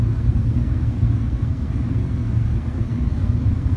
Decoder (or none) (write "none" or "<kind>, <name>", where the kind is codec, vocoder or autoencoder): codec, SNAC